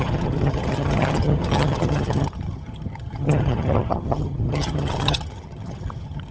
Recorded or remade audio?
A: remade